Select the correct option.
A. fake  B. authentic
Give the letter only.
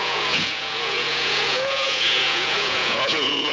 A